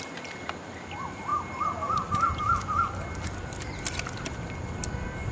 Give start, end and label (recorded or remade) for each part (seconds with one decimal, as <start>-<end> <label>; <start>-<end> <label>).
0.0-5.3 recorded